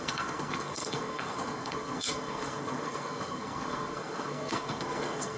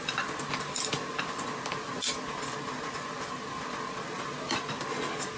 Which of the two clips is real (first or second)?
second